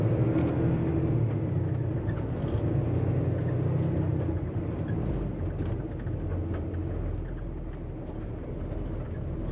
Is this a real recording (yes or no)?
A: yes